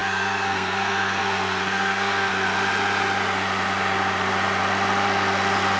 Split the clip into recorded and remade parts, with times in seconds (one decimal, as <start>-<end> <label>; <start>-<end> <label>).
0.0-2.3 remade; 2.3-5.8 recorded